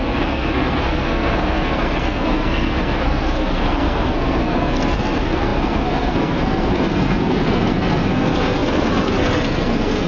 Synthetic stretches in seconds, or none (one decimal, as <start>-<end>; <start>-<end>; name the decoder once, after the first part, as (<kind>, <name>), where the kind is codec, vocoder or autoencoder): 0.0-10.1 (codec, SNAC)